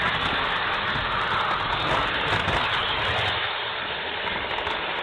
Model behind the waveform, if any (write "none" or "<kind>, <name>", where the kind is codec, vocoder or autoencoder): none